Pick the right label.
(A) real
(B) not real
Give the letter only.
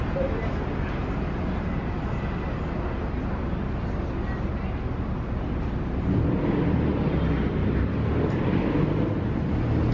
A